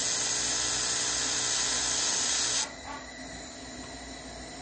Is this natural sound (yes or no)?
yes